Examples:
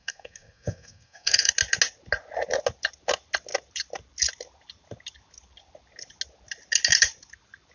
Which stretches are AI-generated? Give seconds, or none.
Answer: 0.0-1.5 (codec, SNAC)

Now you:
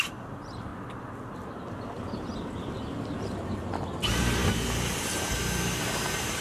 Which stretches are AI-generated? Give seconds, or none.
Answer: none

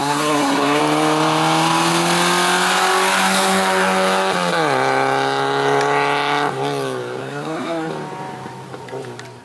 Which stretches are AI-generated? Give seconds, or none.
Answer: 0.0-0.8 (codec, SNAC); 7.2-7.9

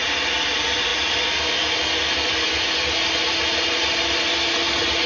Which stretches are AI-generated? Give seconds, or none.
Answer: none

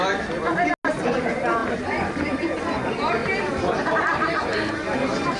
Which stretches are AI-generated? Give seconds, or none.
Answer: 1.6-2.6 (vocoder, BigVGAN v2)

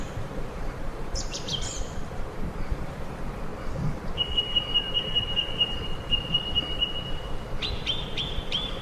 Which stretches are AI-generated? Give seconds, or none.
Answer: 0.0-1.5 (vocoder, BigVGAN v2); 2.7-3.5; 8.2-8.8

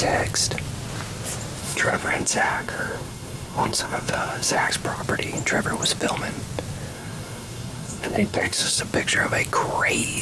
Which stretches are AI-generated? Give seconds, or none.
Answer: 1.6-4.7 (codec, SNAC); 6.9-8.8